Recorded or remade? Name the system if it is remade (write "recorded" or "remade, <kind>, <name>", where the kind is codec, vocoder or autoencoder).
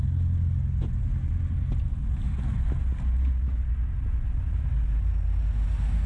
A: recorded